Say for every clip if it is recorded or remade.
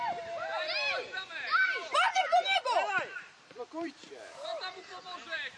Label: remade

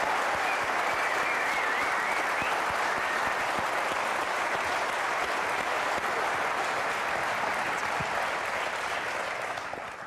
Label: recorded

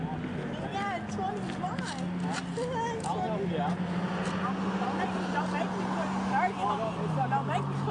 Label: recorded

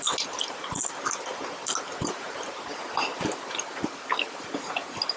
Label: recorded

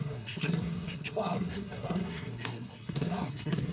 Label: remade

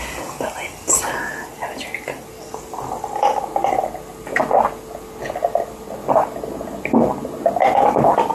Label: recorded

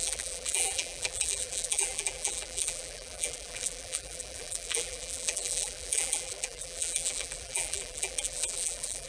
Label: remade